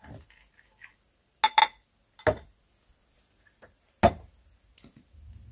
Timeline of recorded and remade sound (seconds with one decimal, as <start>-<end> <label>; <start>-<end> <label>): 0.0-5.5 recorded